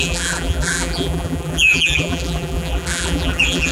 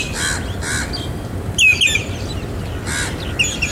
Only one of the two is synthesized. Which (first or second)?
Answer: first